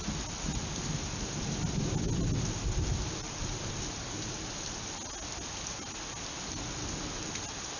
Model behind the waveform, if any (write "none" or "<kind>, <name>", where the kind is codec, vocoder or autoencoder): none